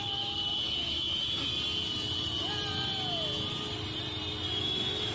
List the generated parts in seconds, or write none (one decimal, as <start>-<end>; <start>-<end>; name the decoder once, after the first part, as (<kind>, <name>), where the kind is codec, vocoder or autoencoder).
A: 0.0-1.5 (autoencoder, DAC-VAE); 4.6-5.1